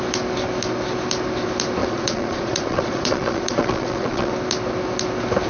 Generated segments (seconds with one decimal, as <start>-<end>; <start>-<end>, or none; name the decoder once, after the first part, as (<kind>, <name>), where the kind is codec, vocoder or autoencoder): 1.8-4.3 (vocoder, Vocos)